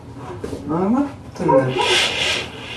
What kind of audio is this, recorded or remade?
remade